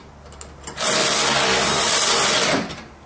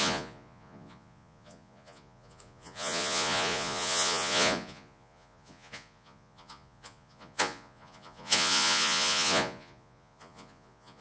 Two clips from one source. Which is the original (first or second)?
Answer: first